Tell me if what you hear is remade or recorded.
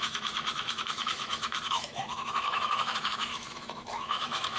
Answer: remade